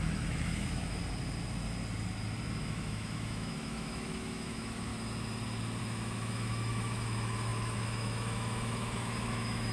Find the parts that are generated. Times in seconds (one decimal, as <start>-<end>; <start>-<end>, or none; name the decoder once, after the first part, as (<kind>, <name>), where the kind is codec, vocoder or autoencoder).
0.0-1.0 (autoencoder, DAC-VAE); 2.6-4.9; 5.8-9.7